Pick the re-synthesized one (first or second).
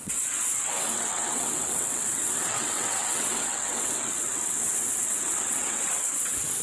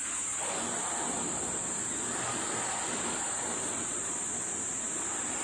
first